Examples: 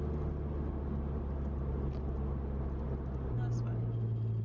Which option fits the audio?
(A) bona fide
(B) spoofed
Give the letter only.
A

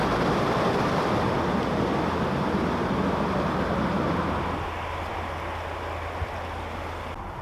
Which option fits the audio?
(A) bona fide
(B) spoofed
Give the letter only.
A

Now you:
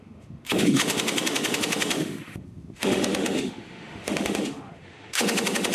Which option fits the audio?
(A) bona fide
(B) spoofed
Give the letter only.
B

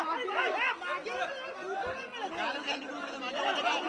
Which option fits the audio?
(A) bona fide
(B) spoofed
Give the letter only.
A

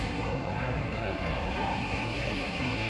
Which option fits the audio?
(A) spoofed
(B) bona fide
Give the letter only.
A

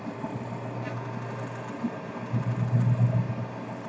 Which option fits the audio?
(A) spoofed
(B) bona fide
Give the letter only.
B